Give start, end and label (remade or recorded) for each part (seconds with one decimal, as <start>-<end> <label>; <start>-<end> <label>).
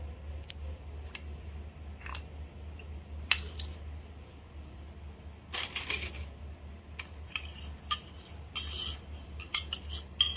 0.0-10.4 recorded